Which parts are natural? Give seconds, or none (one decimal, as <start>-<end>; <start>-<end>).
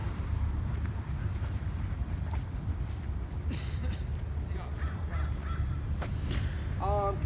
0.0-7.3